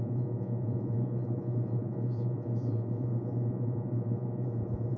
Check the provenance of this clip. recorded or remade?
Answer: remade